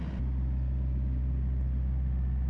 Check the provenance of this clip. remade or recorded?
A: recorded